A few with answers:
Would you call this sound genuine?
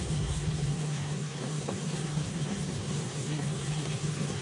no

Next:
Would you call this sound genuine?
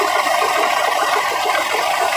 no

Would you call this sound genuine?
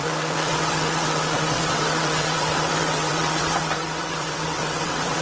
no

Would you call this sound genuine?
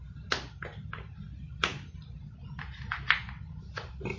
yes